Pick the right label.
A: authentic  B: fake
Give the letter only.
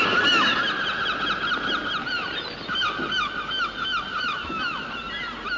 A